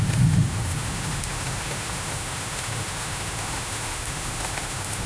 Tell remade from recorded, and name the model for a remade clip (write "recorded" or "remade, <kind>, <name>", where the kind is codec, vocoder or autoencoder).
remade, autoencoder, DAC-VAE